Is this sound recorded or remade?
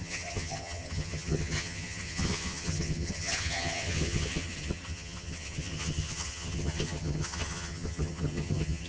remade